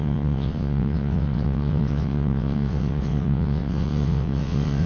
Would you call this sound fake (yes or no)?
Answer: yes